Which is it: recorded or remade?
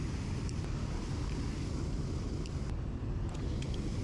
recorded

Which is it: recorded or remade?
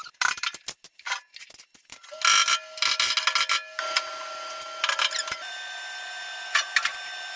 recorded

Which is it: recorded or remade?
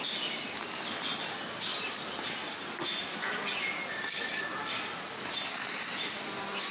recorded